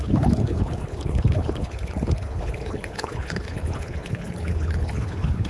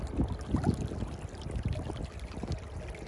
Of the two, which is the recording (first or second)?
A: second